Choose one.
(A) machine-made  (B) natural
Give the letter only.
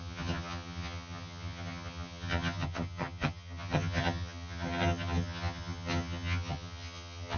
A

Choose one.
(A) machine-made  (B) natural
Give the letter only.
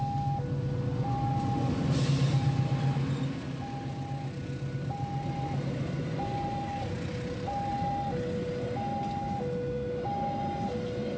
B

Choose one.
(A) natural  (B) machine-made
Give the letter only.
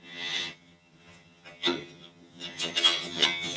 B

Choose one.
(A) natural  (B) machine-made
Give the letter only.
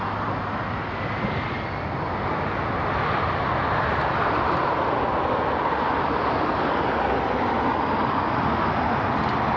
A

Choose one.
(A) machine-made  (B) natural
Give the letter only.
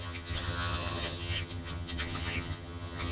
A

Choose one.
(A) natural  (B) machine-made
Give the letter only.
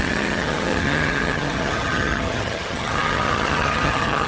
B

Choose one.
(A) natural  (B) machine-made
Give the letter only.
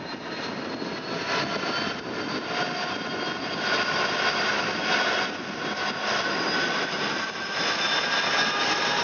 A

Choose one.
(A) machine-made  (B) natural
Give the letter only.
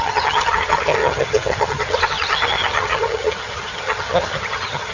A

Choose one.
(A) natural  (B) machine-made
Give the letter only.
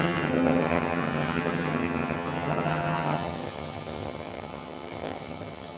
B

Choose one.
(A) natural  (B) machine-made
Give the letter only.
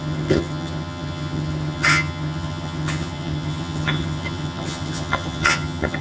B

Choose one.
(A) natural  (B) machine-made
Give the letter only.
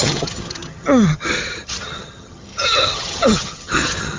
B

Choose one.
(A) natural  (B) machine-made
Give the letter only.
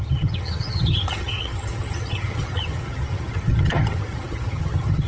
B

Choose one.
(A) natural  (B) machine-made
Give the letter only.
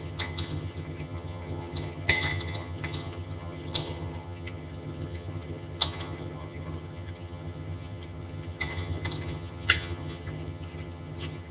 B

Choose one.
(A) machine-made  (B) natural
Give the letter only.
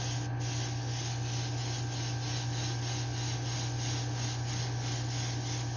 B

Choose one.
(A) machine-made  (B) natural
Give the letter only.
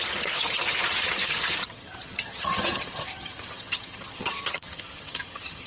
A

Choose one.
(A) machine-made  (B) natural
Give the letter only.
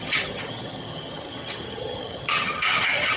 A